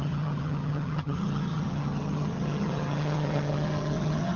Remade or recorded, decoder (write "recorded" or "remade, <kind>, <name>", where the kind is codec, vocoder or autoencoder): remade, vocoder, HiFi-GAN